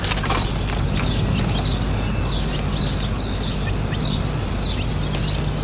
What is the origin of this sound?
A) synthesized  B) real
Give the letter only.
B